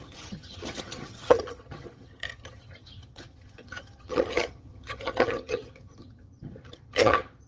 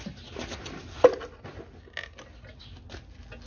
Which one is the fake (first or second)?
first